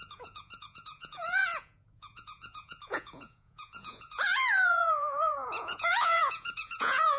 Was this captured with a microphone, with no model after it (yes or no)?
no